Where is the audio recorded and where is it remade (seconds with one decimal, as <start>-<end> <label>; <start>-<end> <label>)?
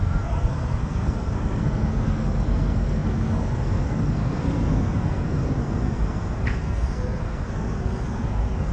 0.0-8.7 remade